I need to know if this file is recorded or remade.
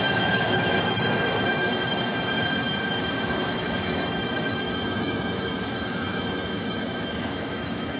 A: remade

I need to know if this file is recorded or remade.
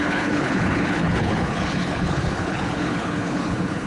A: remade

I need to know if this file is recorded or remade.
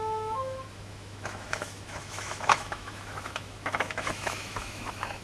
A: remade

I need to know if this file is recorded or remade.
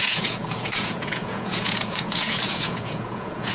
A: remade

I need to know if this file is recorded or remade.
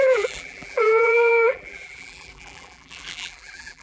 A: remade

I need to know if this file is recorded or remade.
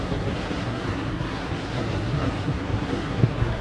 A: remade